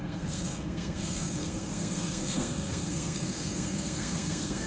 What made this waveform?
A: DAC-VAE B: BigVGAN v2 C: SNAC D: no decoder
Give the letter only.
C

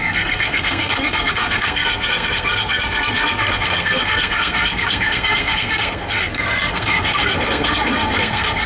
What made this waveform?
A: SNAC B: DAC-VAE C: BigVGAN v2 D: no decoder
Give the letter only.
A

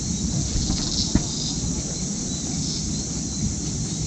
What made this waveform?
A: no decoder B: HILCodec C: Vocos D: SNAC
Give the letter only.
A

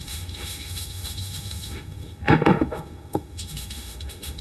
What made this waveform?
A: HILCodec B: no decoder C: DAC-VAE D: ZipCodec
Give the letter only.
C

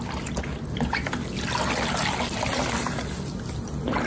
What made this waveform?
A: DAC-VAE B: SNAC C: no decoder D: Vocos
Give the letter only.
C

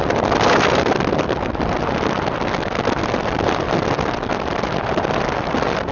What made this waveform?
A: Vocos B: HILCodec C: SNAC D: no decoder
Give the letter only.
D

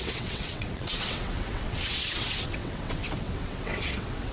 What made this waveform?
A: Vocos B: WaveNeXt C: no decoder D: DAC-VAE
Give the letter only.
B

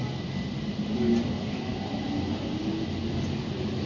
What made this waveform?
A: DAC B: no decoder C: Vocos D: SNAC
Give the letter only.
B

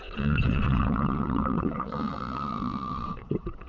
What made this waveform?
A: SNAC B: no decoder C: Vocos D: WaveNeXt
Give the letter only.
D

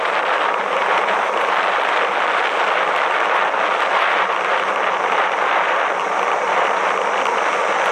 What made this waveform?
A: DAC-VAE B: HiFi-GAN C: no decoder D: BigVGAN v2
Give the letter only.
C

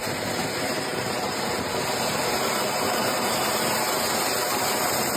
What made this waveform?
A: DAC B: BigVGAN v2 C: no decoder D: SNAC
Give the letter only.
B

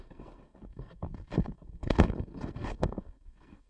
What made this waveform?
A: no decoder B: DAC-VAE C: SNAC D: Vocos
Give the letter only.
C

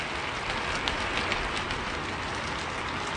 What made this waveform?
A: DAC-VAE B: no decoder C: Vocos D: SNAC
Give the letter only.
B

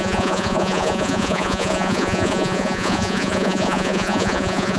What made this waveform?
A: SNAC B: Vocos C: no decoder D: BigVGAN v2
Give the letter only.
B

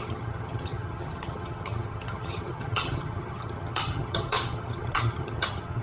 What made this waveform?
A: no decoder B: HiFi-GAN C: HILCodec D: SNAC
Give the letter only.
B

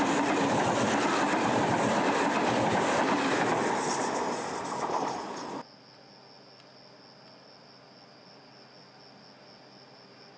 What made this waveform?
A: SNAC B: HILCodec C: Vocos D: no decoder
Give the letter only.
D